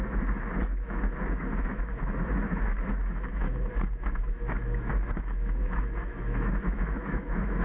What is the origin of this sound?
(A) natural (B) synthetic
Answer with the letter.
B